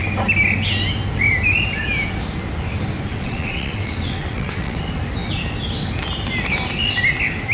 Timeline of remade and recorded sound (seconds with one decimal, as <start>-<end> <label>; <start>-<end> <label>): 0.0-3.1 recorded; 3.1-4.8 remade; 4.8-7.5 recorded